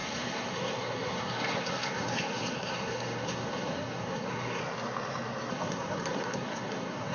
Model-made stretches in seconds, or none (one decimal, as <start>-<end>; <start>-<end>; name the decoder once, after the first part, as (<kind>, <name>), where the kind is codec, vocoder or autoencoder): 0.0-4.6 (codec, SNAC); 5.5-7.1